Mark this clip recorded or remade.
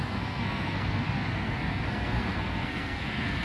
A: remade